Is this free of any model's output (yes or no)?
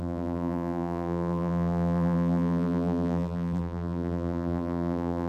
no